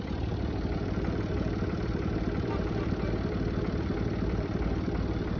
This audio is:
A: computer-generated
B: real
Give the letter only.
A